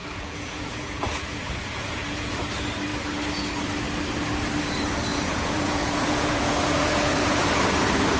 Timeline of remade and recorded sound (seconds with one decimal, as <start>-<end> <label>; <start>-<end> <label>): 0.0-2.3 remade; 2.3-5.1 recorded; 5.1-7.4 remade; 7.4-8.2 recorded